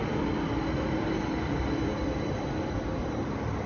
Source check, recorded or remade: remade